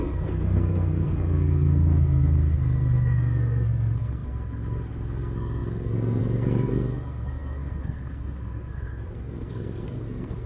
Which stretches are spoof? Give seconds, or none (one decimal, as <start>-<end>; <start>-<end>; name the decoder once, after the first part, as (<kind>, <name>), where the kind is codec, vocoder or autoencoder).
0.0-10.5 (codec, SNAC)